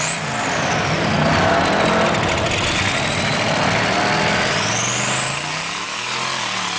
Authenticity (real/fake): real